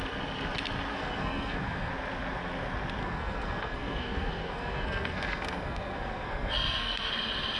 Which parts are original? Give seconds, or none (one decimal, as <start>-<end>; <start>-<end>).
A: 0.0-0.9; 1.9-3.0; 7.1-7.6